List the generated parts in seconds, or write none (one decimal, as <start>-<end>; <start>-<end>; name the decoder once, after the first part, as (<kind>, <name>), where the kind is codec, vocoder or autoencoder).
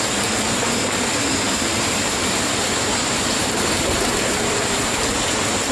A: 3.0-5.1 (vocoder, BigVGAN v2)